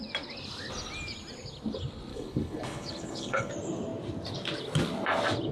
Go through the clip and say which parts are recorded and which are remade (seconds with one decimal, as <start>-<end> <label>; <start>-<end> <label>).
0.0-2.1 recorded; 2.1-3.5 remade; 3.5-5.5 recorded